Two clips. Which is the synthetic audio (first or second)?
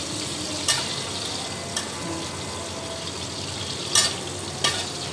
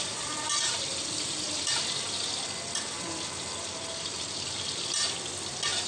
second